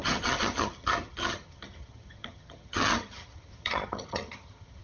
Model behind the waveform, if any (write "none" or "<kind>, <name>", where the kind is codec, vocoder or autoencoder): vocoder, HiFi-GAN